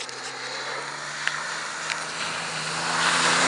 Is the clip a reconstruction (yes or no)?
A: no